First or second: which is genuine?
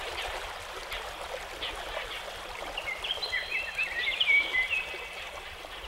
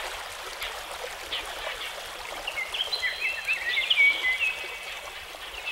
second